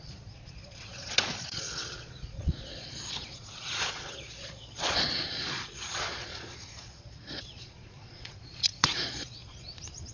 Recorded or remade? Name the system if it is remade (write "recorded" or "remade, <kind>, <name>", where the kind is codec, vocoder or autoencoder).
remade, vocoder, Vocos